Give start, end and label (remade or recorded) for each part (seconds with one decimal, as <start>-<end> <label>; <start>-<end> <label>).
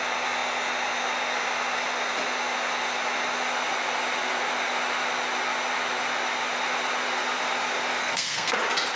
0.0-8.0 recorded; 8.0-8.6 remade; 8.6-9.0 recorded